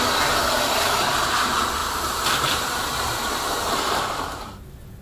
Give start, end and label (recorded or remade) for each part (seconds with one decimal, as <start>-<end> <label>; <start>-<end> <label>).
0.0-0.4 recorded; 0.4-1.2 remade; 1.2-1.8 recorded; 1.8-4.6 remade; 4.6-5.0 recorded